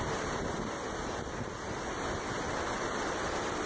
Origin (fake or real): real